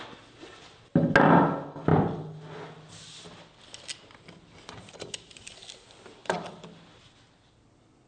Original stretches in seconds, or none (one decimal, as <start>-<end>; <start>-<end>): 0.0-6.2; 7.5-8.1